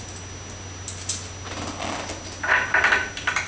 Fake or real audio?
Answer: real